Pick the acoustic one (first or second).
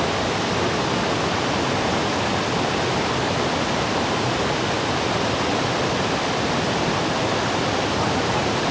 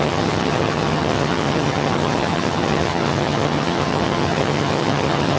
first